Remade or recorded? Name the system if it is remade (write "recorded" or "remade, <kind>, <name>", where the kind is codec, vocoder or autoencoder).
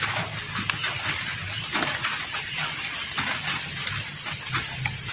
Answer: recorded